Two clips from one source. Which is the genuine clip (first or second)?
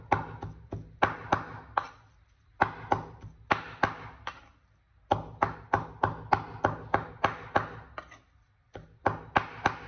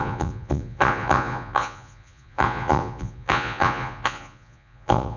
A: first